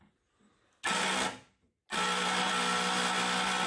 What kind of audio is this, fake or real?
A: real